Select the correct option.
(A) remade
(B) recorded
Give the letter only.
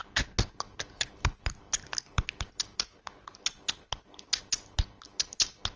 B